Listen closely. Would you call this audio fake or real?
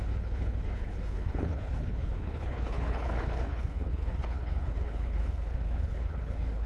fake